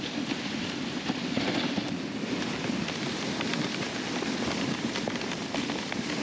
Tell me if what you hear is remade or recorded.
remade